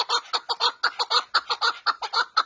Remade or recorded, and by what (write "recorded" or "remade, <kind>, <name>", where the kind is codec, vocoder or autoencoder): recorded